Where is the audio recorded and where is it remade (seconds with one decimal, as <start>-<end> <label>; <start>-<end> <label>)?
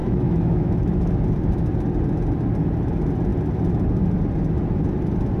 0.0-1.1 remade; 1.1-5.4 recorded